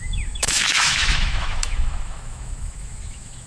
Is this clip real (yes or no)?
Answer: no